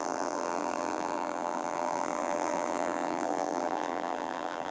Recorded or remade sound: remade